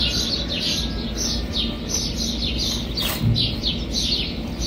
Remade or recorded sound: recorded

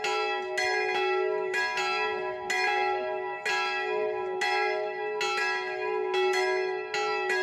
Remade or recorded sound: recorded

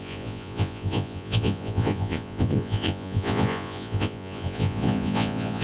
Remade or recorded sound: remade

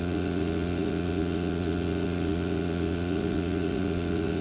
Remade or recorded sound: remade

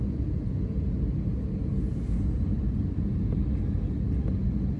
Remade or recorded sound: recorded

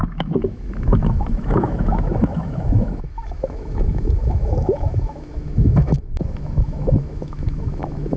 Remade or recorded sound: remade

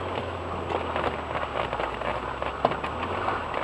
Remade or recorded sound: recorded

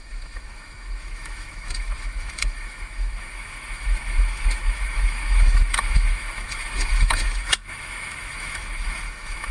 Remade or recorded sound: remade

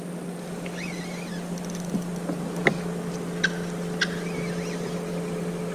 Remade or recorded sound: recorded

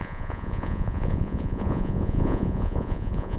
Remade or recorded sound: remade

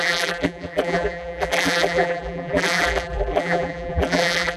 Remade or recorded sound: remade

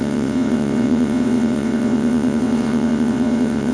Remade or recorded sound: remade